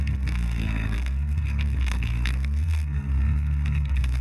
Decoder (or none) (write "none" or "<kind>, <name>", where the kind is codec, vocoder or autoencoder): codec, SNAC